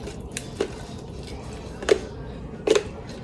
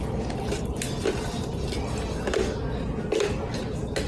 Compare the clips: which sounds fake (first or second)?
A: first